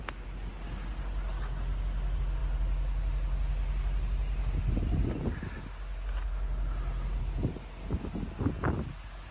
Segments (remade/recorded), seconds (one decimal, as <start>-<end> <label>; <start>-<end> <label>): 0.0-9.3 recorded